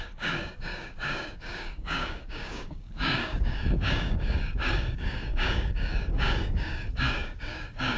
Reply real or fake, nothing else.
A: fake